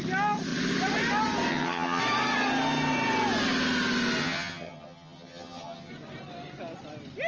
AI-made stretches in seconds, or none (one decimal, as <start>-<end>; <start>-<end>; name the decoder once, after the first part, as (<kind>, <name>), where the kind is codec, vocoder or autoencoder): 1.5-2.0 (vocoder, HiFi-GAN); 4.2-5.9